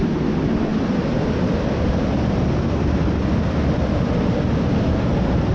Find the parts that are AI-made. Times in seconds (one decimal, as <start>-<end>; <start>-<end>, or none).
0.7-4.0